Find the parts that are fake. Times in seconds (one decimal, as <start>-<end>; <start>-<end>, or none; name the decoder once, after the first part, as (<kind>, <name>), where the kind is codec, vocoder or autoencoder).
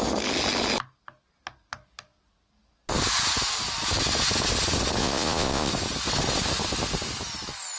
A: 5.0-5.7 (vocoder, Vocos)